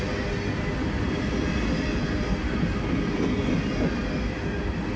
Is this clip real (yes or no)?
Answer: yes